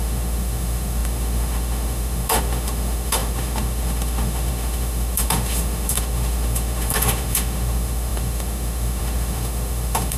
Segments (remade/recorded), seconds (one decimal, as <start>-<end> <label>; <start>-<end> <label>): 0.0-10.2 remade